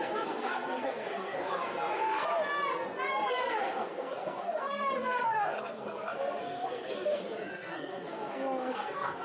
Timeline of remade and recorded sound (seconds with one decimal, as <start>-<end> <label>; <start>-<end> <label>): 0.0-2.3 remade; 2.3-3.1 recorded; 3.1-9.2 remade